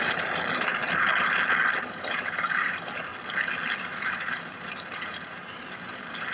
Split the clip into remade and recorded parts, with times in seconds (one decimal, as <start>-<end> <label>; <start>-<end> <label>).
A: 0.0-0.8 remade; 0.8-1.9 recorded; 1.9-3.1 remade; 3.1-3.8 recorded; 3.8-6.3 remade